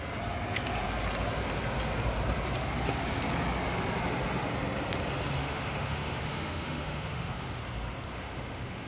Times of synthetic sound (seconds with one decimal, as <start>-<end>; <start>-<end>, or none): 5.4-7.6; 8.1-8.9